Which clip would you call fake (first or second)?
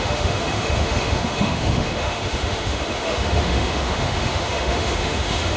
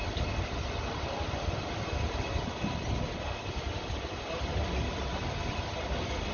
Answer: first